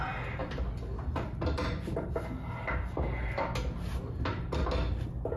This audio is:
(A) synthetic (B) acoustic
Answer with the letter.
B